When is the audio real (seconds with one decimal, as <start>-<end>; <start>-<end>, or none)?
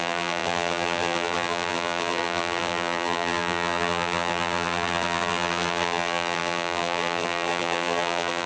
none